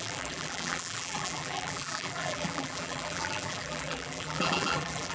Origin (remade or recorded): remade